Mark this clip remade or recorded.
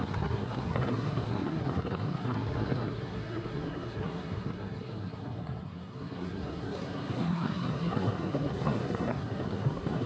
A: remade